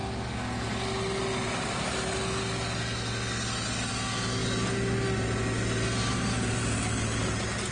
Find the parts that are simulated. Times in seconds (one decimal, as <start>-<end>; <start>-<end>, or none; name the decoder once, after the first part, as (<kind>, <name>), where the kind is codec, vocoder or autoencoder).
none